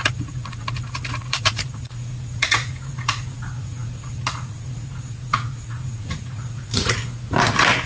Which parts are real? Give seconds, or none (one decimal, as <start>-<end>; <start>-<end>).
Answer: 7.0-7.9